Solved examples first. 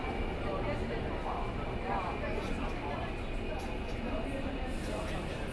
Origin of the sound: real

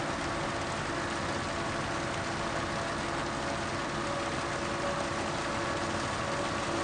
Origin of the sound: real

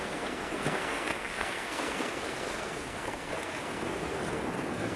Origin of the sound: fake